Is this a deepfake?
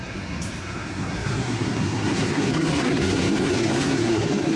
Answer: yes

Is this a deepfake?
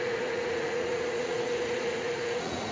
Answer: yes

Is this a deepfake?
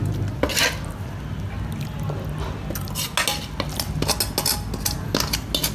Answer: no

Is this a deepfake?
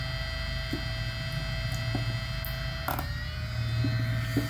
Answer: no